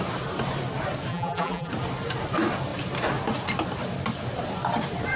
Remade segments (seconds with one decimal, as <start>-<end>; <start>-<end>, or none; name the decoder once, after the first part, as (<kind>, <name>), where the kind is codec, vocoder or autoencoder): 1.1-1.7 (vocoder, BigVGAN v2)